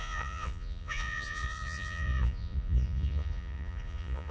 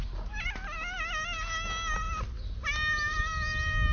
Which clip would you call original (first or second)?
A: second